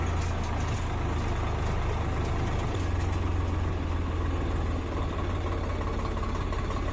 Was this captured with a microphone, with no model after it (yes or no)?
yes